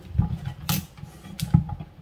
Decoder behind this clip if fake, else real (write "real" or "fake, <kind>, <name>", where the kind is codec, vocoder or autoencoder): real